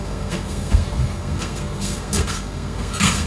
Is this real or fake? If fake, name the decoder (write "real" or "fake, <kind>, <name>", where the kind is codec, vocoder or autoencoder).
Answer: fake, codec, SNAC